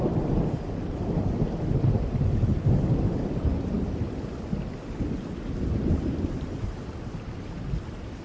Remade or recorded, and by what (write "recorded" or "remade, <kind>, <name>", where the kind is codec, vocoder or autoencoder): recorded